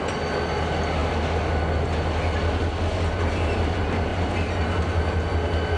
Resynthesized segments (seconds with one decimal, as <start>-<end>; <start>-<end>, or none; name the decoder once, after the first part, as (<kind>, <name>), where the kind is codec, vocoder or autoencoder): none